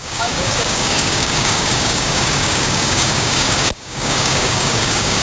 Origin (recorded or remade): remade